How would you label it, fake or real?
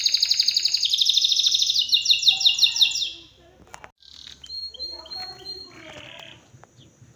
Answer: real